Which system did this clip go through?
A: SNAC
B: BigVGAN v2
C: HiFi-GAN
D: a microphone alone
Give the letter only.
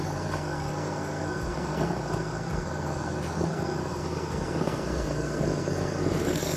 A